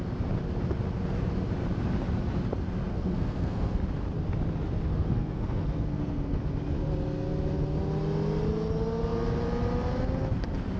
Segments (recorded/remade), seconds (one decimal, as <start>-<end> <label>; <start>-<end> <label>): 0.0-2.9 recorded; 2.9-3.8 remade; 3.8-4.9 recorded; 4.9-6.4 remade; 6.4-10.8 recorded